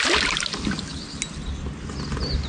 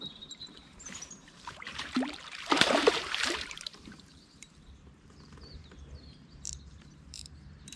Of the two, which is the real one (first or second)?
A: first